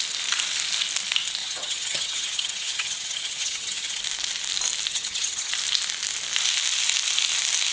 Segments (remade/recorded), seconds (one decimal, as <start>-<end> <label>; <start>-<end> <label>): 0.0-1.4 recorded; 1.4-4.0 remade; 4.0-4.9 recorded; 4.9-5.5 remade; 5.5-7.7 recorded